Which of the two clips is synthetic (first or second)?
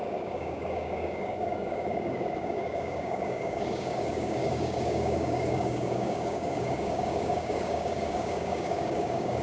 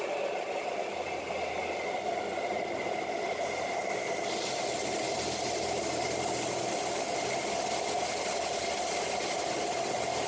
first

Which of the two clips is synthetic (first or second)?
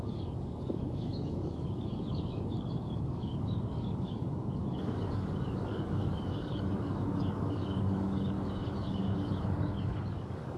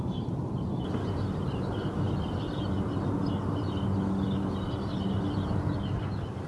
first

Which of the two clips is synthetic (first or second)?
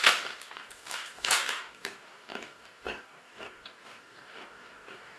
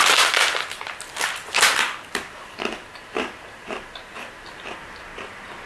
first